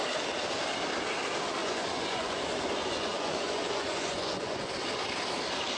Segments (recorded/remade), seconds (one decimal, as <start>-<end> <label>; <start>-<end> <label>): 0.0-1.6 recorded; 1.6-2.4 remade; 2.4-2.8 recorded; 2.8-4.7 remade; 4.7-5.8 recorded